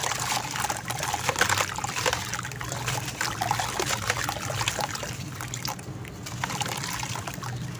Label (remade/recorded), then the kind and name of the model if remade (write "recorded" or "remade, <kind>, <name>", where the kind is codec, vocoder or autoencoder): recorded